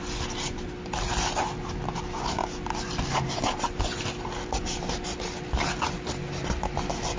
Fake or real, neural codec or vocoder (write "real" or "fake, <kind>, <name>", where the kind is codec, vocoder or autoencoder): real